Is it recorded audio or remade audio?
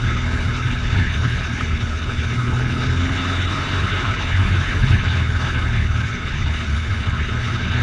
remade